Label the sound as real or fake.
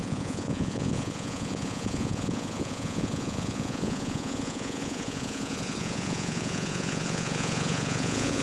fake